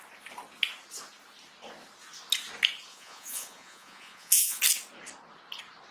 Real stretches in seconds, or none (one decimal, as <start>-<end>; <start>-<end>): 0.0-2.9; 4.6-5.9